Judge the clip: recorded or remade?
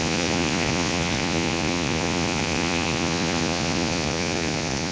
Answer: remade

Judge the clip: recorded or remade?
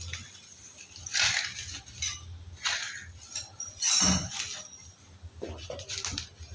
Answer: recorded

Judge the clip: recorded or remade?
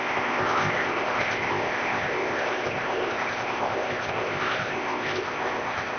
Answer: remade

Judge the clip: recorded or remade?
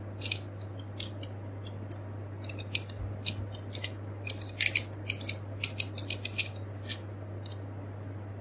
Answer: recorded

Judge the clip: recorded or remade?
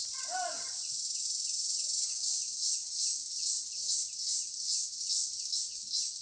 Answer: recorded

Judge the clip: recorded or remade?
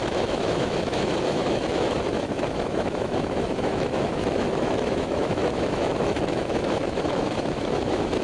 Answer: remade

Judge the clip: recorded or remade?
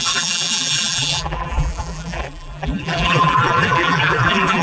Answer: remade